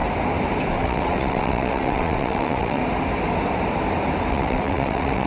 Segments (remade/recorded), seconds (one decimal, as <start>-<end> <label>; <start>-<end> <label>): 0.0-0.7 recorded; 0.7-2.8 remade; 2.8-4.3 recorded; 4.3-5.3 remade